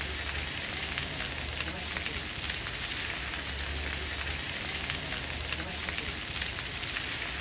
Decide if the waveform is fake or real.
real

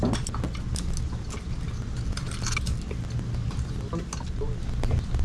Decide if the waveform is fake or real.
real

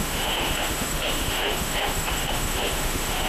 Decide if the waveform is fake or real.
fake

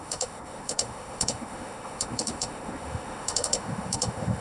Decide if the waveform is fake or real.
fake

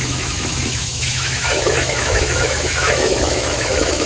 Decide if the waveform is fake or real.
fake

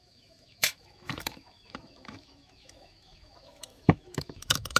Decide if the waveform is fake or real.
fake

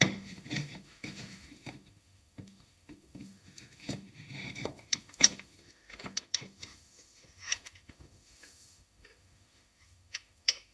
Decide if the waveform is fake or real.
fake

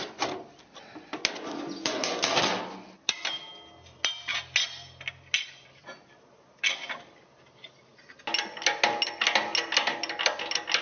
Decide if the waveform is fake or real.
real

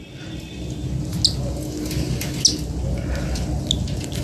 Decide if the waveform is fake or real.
real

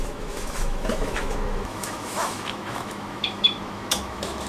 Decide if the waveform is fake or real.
fake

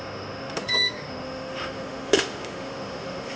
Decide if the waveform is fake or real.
fake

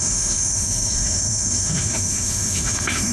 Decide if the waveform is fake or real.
fake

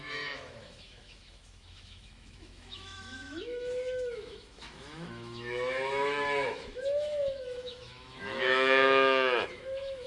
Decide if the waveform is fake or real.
fake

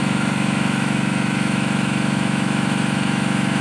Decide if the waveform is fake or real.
fake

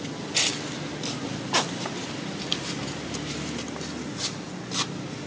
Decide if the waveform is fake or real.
real